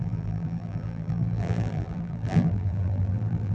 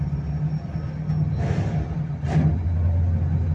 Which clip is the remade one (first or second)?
first